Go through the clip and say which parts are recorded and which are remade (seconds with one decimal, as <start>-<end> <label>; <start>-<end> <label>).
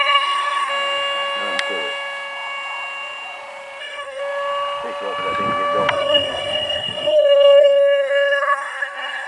0.0-0.7 remade; 0.7-3.8 recorded; 3.8-4.2 remade; 4.2-5.9 recorded; 5.9-9.3 remade